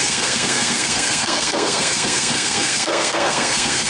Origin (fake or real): fake